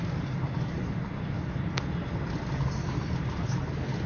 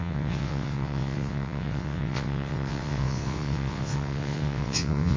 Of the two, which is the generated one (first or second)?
second